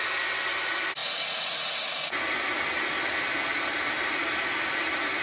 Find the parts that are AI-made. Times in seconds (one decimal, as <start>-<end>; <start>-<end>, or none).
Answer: none

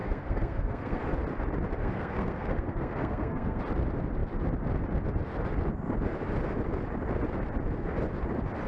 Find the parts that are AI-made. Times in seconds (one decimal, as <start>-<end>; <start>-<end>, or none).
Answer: 0.0-1.0; 1.8-3.6

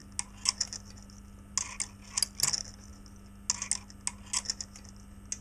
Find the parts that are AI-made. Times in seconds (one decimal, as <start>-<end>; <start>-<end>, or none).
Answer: none

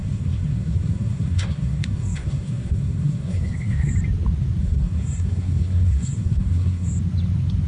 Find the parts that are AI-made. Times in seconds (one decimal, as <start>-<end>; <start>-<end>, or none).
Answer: 0.0-3.9; 4.6-6.9

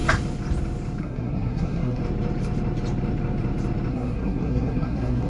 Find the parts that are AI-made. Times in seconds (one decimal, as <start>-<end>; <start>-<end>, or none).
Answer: 1.0-2.0; 3.9-5.3

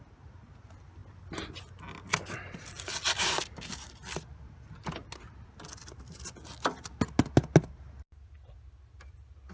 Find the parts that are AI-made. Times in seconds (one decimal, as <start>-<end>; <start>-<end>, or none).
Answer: none